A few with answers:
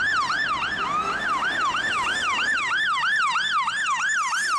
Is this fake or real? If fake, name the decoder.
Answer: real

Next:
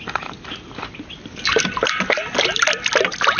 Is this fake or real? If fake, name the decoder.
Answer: real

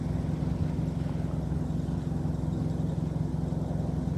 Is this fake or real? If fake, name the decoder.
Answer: real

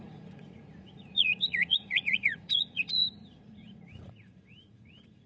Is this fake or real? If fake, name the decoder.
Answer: fake, vocoder, Vocos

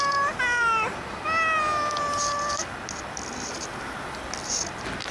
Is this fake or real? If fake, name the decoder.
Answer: real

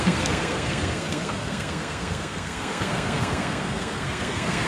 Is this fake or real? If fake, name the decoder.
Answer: fake, codec, SNAC